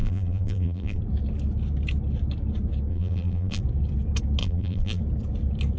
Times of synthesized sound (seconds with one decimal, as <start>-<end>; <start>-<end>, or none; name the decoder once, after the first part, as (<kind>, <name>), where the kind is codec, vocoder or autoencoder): 0.0-1.0 (vocoder, BigVGAN v2); 2.9-3.6; 4.4-5.0